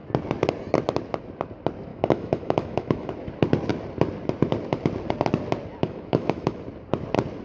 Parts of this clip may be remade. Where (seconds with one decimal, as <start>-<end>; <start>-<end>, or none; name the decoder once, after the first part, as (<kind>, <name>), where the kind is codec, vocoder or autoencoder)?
1.9-3.1 (autoencoder, DAC-VAE); 5.8-6.6